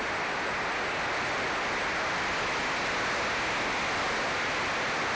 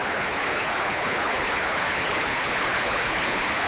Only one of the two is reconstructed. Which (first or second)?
second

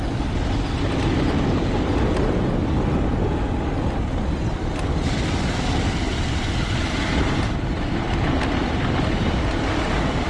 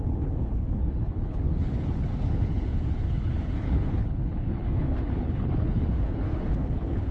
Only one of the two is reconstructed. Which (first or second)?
second